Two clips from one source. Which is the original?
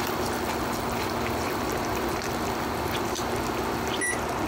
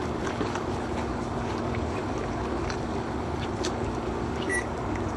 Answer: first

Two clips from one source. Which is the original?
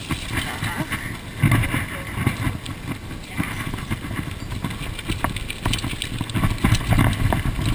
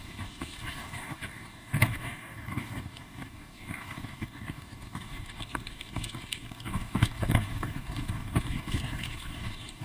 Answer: first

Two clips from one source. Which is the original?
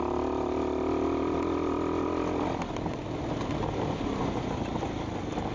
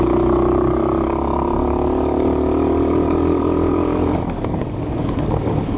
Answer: first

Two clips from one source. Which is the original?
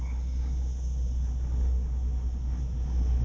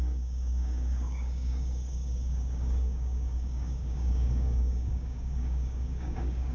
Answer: first